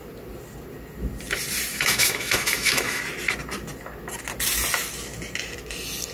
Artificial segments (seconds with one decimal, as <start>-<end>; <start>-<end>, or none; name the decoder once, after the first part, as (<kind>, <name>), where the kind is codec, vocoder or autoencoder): 1.7-3.0 (autoencoder, DAC-VAE)